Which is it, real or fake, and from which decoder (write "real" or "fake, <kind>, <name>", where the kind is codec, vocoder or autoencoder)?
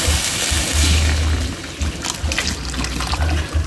real